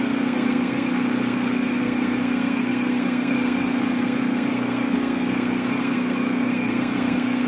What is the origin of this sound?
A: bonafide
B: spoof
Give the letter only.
B